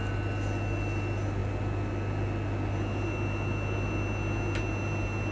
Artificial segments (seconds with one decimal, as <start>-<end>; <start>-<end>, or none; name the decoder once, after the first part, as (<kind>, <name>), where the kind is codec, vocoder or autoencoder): none